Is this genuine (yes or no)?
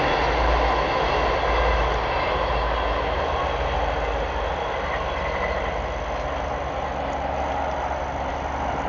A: yes